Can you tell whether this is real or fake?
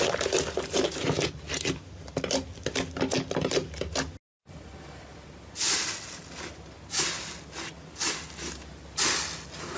real